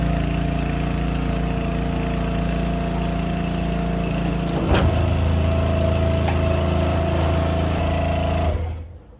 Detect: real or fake real